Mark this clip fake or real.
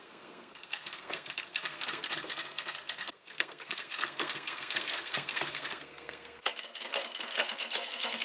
fake